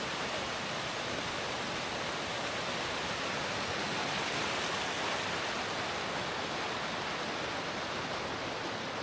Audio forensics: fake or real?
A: real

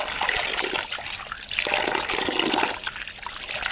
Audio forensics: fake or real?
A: real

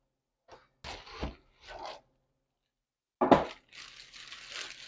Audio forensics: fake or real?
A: real